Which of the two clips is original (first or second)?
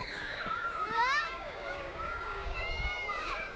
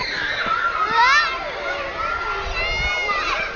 second